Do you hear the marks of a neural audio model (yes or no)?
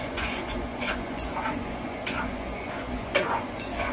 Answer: yes